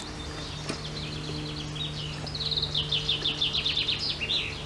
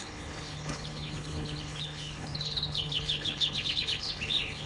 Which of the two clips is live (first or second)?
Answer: first